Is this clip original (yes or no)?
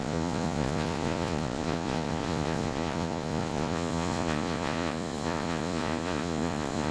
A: no